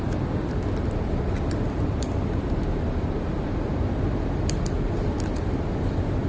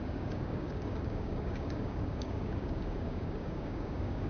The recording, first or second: first